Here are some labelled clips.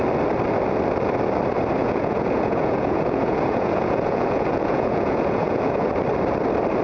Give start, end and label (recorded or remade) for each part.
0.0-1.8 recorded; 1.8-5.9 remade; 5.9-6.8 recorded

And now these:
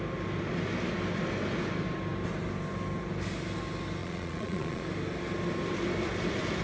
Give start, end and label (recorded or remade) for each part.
0.0-4.0 recorded; 4.0-4.8 remade; 4.8-6.6 recorded

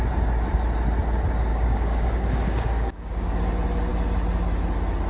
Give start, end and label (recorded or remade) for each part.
0.0-1.5 recorded; 1.5-3.4 remade; 3.4-5.1 recorded

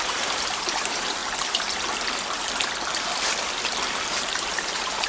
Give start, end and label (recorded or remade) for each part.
0.0-1.2 remade; 1.2-4.3 recorded; 4.3-5.1 remade

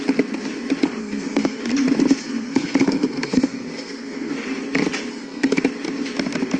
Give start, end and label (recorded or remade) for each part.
0.0-1.0 recorded; 1.0-1.6 remade; 1.6-2.2 recorded; 2.2-4.3 remade; 4.3-5.1 recorded; 5.1-5.6 remade; 5.6-6.6 recorded

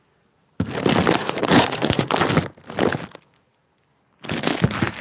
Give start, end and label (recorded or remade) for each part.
0.0-1.2 recorded; 1.2-2.1 remade; 2.1-5.0 recorded